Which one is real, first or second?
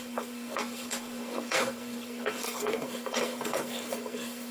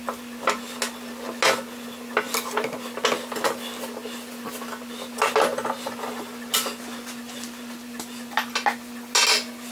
second